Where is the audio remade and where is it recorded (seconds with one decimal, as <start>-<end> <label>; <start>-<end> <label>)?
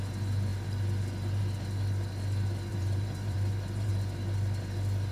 0.0-2.7 recorded; 2.7-3.9 remade; 3.9-5.1 recorded